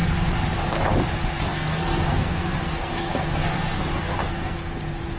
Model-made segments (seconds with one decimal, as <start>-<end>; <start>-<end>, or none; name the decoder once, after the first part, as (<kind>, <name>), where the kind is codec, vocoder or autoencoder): 1.5-4.6 (codec, SNAC)